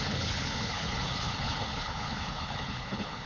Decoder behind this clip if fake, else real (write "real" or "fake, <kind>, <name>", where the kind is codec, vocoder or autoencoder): fake, codec, HILCodec